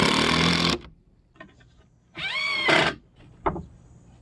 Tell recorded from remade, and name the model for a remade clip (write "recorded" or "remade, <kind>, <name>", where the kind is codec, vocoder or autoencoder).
remade, vocoder, BigVGAN v2